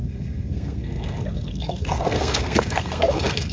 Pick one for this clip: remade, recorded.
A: remade